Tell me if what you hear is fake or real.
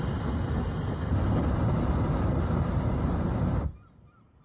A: real